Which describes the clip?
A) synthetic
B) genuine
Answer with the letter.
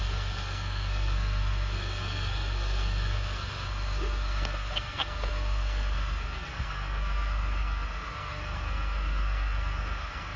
A